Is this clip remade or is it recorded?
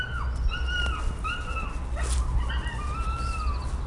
recorded